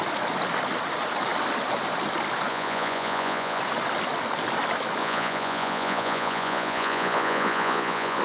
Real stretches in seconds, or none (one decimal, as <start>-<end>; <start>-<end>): 0.0-2.5; 3.6-5.0